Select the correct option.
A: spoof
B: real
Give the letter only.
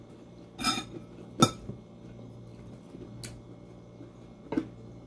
B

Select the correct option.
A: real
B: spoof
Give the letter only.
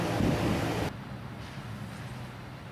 A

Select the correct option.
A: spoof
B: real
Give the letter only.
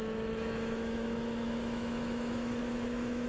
A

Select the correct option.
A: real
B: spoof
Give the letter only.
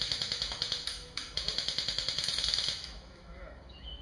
B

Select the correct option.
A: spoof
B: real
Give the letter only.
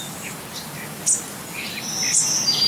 B